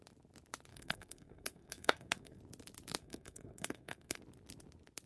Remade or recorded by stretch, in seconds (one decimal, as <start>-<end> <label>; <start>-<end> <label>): 0.0-0.7 recorded; 0.7-2.4 remade; 2.4-3.0 recorded; 3.0-4.2 remade; 4.2-5.1 recorded